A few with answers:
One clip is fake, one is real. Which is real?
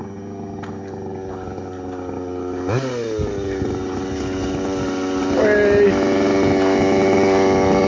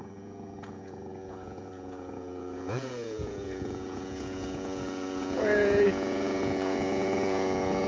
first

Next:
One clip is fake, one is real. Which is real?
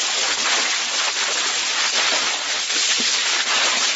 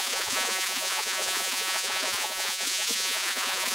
first